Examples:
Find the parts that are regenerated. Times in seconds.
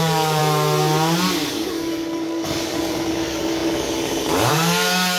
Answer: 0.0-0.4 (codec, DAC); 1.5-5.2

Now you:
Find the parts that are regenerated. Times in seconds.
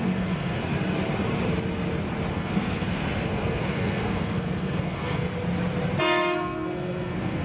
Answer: 0.0-0.6 (codec, SNAC); 2.3-5.3; 6.0-7.4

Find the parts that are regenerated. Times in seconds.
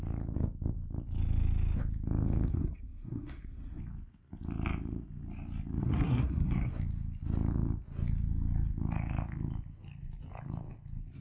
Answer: 2.5-3.8 (codec, SNAC); 5.8-6.7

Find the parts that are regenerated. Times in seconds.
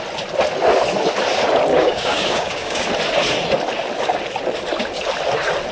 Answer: 1.7-2.9 (codec, DAC)